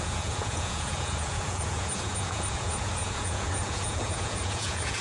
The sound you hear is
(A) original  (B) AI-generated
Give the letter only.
B